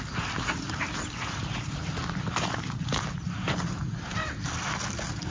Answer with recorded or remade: recorded